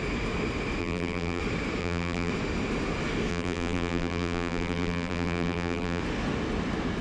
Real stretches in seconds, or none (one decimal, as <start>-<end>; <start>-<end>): 0.0-0.8; 1.4-1.8; 2.3-3.3; 6.0-7.0